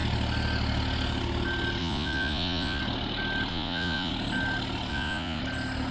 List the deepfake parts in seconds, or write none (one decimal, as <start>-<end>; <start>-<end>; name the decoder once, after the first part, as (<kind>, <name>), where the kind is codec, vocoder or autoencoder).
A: 1.8-2.8 (vocoder, Vocos); 3.5-4.1; 4.9-5.4